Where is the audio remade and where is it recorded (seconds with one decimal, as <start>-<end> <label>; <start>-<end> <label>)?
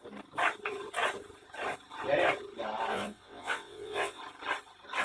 0.0-2.9 recorded; 2.9-4.2 remade; 4.2-5.0 recorded